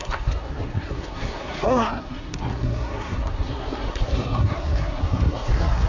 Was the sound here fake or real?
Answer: fake